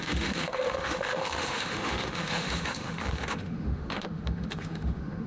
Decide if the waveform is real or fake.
fake